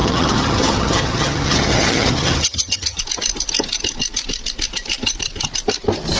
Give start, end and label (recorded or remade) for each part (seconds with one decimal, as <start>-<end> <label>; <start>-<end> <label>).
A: 0.0-3.0 remade; 3.0-6.2 recorded